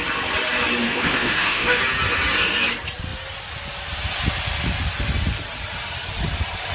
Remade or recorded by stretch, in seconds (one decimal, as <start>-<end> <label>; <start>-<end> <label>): 0.0-0.8 recorded; 0.8-1.8 remade; 1.8-6.7 recorded